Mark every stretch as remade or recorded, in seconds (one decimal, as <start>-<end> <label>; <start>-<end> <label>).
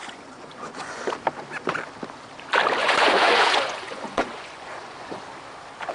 0.0-1.0 remade; 1.0-2.8 recorded; 2.8-5.2 remade; 5.2-5.9 recorded